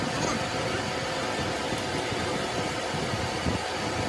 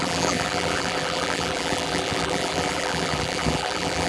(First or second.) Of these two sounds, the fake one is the second